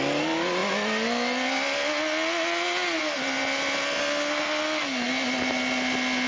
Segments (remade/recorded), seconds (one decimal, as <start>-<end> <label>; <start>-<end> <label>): 0.0-6.3 recorded